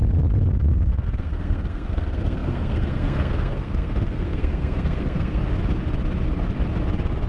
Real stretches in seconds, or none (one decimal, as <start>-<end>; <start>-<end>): 0.0-0.5; 5.4-7.3